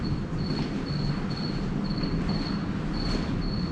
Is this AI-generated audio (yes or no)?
no